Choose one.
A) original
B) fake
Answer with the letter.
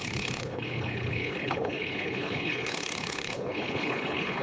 B